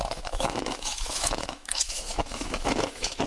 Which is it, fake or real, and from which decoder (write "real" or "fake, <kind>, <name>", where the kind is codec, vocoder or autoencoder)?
fake, autoencoder, DAC-VAE